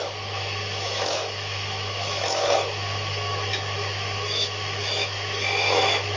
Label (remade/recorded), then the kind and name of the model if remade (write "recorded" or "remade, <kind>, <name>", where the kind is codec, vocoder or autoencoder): remade, autoencoder, DAC-VAE